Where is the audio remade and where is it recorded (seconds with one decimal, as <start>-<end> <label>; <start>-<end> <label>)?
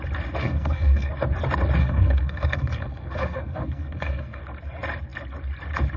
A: 0.0-0.4 recorded; 0.4-1.1 remade; 1.1-1.8 recorded; 1.8-4.4 remade; 4.4-6.0 recorded